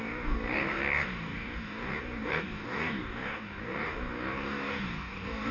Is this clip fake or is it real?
fake